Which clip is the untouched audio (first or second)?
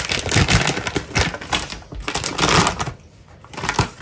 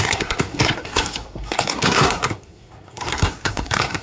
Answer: first